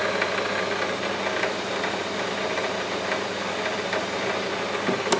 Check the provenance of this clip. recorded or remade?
recorded